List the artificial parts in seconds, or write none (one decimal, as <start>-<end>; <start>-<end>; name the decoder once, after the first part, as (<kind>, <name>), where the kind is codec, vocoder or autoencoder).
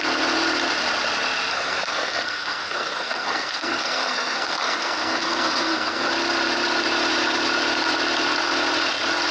1.5-6.1 (codec, SNAC)